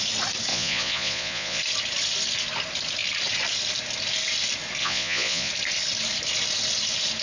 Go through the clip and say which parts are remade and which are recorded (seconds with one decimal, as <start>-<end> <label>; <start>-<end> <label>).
0.0-0.5 recorded; 0.5-1.6 remade; 1.6-4.8 recorded; 4.8-5.5 remade; 5.5-7.2 recorded